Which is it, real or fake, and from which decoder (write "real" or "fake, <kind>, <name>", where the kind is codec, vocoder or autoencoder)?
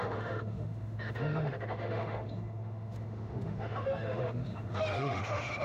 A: fake, autoencoder, DAC-VAE